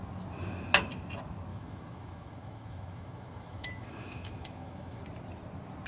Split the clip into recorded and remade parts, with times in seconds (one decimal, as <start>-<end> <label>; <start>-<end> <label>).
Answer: 0.0-1.5 recorded; 1.5-5.0 remade; 5.0-5.9 recorded